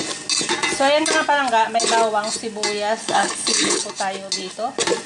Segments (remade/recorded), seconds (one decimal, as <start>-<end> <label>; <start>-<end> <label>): 0.0-3.0 recorded; 3.0-3.8 remade; 3.8-5.1 recorded